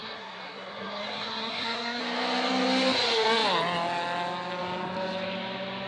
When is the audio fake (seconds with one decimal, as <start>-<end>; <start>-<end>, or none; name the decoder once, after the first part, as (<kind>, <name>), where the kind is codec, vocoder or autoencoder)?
0.0-2.0 (codec, SNAC)